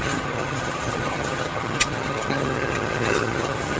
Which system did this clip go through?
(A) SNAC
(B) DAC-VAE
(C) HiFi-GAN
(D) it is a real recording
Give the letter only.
C